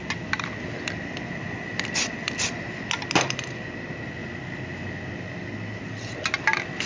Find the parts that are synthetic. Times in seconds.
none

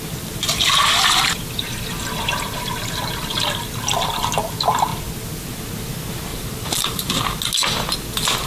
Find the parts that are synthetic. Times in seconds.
6.3-7.2 (vocoder, BigVGAN v2)

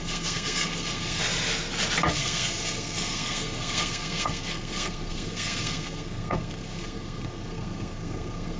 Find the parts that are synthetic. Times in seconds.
0.0-1.2 (codec, SNAC); 2.1-8.6